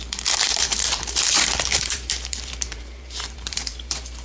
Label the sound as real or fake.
fake